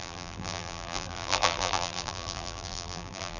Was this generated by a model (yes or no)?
yes